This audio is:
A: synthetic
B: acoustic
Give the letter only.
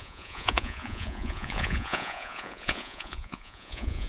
A